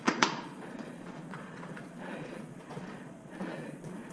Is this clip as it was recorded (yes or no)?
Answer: no